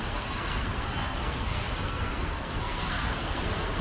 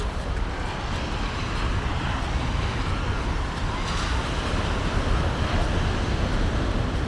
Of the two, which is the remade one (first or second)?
first